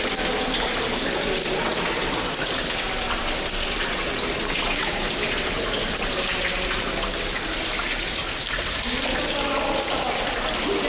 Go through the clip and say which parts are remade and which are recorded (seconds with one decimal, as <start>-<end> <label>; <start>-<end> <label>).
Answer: 0.0-10.9 recorded